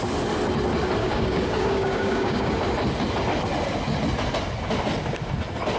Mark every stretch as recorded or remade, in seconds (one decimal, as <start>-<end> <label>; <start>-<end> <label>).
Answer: 0.0-1.0 recorded; 1.0-2.5 remade; 2.5-5.8 recorded